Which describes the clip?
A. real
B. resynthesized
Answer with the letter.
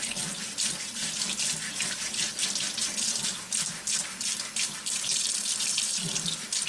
A